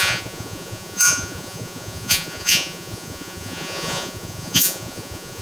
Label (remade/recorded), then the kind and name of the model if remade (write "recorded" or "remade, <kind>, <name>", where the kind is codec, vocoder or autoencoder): remade, vocoder, Vocos